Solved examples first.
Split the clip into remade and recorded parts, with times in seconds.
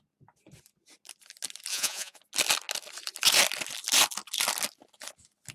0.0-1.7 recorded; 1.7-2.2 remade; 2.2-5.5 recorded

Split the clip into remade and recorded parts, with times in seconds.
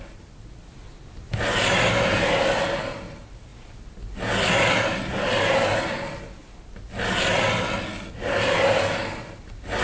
0.0-9.8 recorded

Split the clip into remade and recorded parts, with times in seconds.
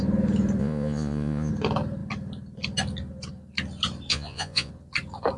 0.0-0.6 recorded; 0.6-1.5 remade; 1.5-4.1 recorded; 4.1-4.7 remade; 4.7-5.4 recorded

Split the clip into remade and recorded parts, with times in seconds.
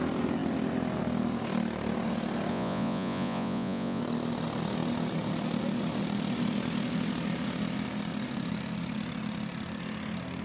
0.0-2.5 recorded; 2.5-4.0 remade; 4.0-10.4 recorded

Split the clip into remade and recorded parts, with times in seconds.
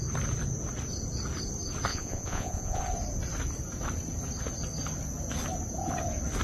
0.0-1.9 recorded; 1.9-2.8 remade; 2.8-6.4 recorded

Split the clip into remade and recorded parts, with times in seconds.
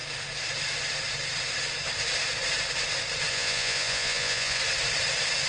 0.0-3.3 recorded; 3.3-4.6 remade; 4.6-5.5 recorded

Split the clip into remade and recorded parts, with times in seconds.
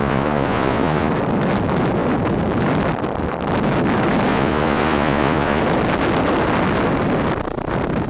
0.0-1.1 remade; 1.1-4.3 recorded; 4.3-5.6 remade; 5.6-8.1 recorded